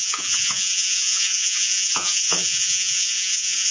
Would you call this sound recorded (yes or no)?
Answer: no